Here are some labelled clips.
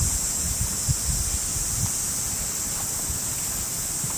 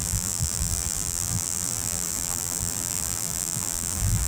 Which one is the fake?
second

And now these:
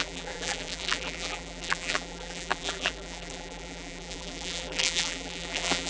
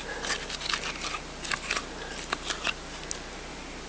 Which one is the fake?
first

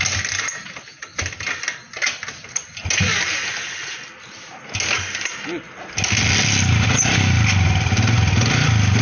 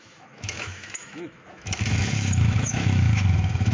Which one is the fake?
second